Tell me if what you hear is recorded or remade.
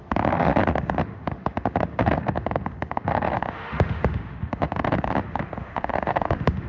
remade